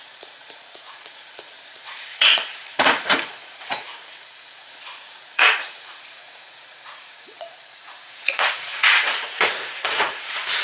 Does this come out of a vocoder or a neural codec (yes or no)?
yes